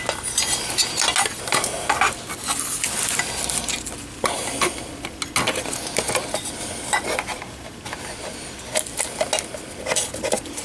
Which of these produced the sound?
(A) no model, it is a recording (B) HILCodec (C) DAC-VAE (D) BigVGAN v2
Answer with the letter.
A